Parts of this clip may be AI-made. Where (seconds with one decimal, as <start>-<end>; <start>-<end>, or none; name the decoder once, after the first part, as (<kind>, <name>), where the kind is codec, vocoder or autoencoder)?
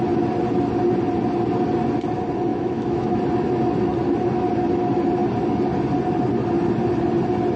2.5-3.2 (autoencoder, DAC-VAE)